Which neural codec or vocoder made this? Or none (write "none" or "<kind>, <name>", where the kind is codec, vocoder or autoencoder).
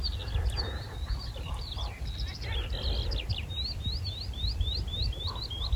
none